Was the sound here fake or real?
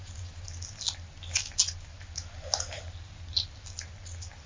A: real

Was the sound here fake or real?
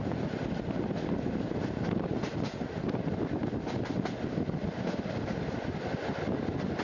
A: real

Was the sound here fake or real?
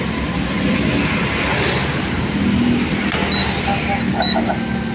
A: real